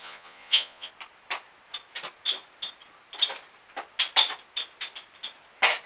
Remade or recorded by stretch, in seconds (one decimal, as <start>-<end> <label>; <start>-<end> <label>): 0.0-0.9 remade; 0.9-5.9 recorded